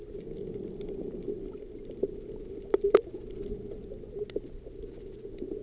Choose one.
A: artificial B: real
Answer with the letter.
B